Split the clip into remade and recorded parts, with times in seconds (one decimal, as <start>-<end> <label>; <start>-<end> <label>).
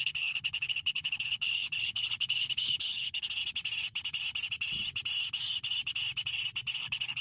0.0-3.4 remade; 3.4-6.8 recorded; 6.8-7.2 remade